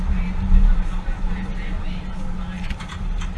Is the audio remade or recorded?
recorded